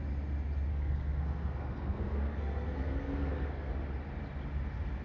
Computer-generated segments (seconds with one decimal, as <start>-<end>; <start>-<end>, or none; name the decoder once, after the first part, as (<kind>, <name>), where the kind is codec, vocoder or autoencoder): 0.7-3.7 (codec, SNAC)